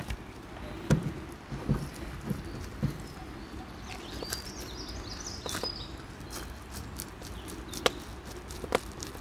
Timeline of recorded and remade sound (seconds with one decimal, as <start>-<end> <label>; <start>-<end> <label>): 0.0-9.2 recorded